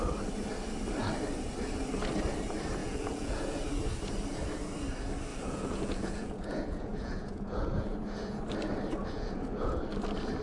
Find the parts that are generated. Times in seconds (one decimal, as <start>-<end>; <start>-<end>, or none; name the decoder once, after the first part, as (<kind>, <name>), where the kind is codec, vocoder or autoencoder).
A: 2.8-3.6 (vocoder, Vocos); 5.3-8.4; 9.0-9.8